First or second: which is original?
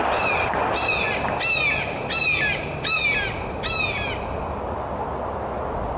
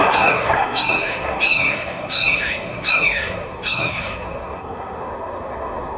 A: first